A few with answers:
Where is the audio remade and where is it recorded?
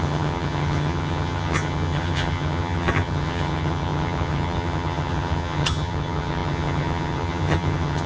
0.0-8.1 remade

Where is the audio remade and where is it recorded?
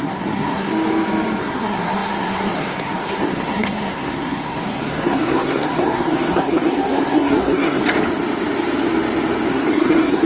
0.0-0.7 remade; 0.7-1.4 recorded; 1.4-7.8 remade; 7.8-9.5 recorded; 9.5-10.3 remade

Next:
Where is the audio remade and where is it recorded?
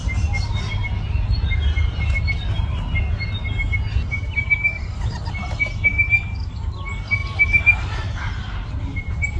0.0-9.4 recorded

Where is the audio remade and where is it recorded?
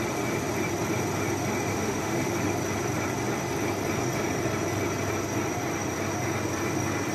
0.0-1.7 recorded; 1.7-2.3 remade; 2.3-7.1 recorded